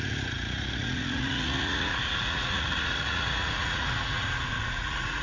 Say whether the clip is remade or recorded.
remade